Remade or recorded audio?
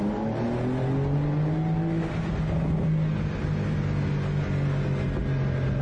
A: recorded